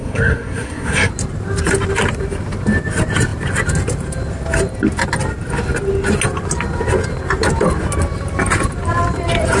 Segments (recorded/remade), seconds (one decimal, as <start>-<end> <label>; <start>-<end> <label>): 0.0-1.1 remade; 1.1-9.6 recorded

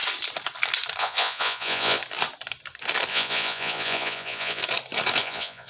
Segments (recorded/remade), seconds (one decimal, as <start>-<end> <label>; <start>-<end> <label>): 0.0-1.0 recorded; 1.0-2.0 remade; 2.0-3.1 recorded; 3.1-4.6 remade; 4.6-5.2 recorded; 5.2-5.7 remade

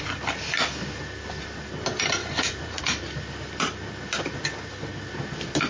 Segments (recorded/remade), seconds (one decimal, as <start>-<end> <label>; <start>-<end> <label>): 0.0-2.2 recorded; 2.2-2.8 remade; 2.8-5.7 recorded

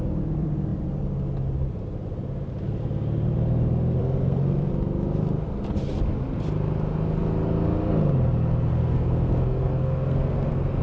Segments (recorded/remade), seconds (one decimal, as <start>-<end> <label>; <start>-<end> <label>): 0.0-4.0 recorded; 4.0-4.7 remade; 4.7-8.7 recorded; 8.7-10.8 remade

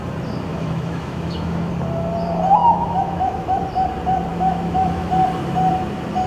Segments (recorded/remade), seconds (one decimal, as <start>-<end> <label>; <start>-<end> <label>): 0.0-0.5 recorded; 0.5-1.7 remade; 1.7-2.6 recorded; 2.6-3.6 remade; 3.6-4.3 recorded; 4.3-5.1 remade; 5.1-6.3 recorded

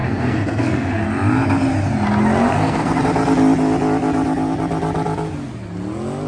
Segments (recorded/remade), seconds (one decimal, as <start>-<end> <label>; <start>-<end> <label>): 0.0-1.0 remade; 1.0-2.5 recorded; 2.5-3.0 remade; 3.0-6.3 recorded

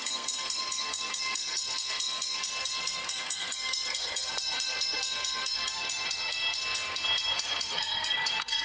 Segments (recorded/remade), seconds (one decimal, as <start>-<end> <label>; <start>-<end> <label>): 0.0-8.6 remade

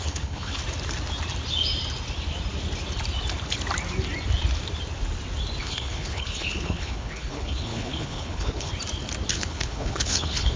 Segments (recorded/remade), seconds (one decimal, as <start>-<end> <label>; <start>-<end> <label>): 0.0-0.6 remade; 0.6-5.6 recorded; 5.6-8.7 remade; 8.7-9.3 recorded; 9.3-10.6 remade